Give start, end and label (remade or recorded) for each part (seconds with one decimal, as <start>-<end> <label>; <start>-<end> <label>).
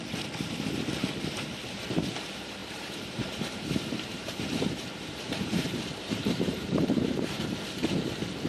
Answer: 0.0-2.6 recorded; 2.6-7.4 remade; 7.4-8.5 recorded